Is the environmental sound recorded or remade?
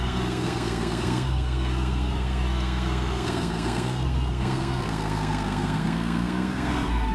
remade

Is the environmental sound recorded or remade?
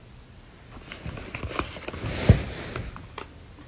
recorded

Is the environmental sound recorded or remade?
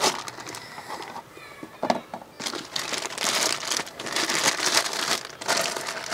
recorded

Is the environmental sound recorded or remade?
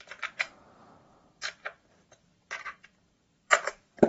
remade